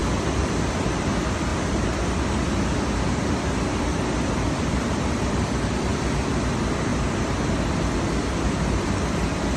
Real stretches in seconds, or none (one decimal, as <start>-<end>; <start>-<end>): 0.0-1.0; 1.5-3.8; 5.9-6.4; 6.9-8.6